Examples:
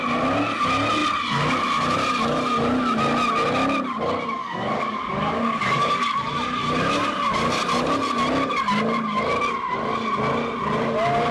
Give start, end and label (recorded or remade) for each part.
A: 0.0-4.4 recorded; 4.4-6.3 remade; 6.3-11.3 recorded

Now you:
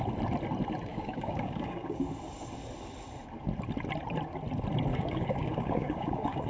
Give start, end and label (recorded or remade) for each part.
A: 0.0-0.9 recorded; 0.9-2.0 remade; 2.0-4.9 recorded; 4.9-6.5 remade

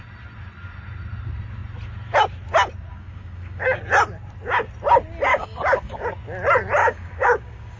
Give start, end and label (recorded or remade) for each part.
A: 0.0-2.9 recorded; 2.9-3.8 remade; 3.8-5.3 recorded; 5.3-6.1 remade; 6.1-6.8 recorded; 6.8-7.8 remade

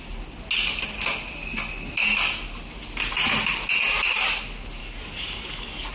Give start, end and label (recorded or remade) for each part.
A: 0.0-4.8 recorded; 4.8-5.9 remade

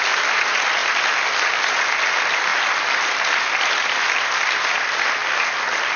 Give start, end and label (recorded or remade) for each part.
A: 0.0-6.0 recorded

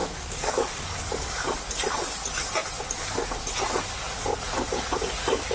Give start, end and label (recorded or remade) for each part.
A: 0.0-1.7 remade; 1.7-5.5 recorded